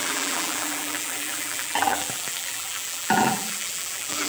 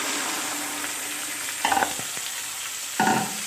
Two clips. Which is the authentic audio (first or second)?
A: second